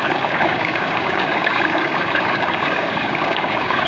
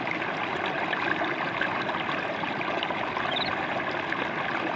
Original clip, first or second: second